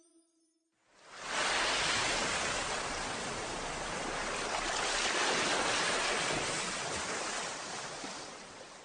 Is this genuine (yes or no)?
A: yes